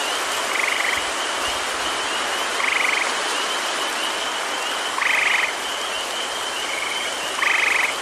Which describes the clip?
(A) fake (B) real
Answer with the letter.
B